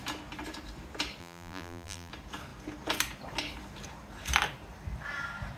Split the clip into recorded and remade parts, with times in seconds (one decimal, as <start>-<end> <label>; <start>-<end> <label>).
0.0-1.2 recorded; 1.2-2.1 remade; 2.1-5.6 recorded